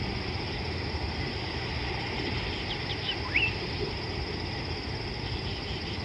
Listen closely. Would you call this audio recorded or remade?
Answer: remade